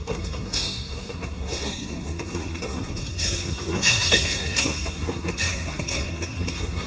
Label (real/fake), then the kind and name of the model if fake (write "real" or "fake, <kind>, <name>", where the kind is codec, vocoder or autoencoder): fake, codec, SNAC